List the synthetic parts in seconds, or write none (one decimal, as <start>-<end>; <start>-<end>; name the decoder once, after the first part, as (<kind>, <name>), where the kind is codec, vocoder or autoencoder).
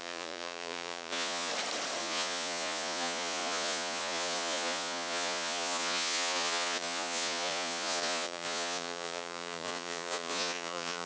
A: 0.0-1.5 (vocoder, Vocos); 2.0-11.1